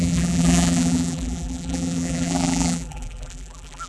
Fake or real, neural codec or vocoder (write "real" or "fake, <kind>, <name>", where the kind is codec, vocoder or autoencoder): fake, vocoder, BigVGAN v2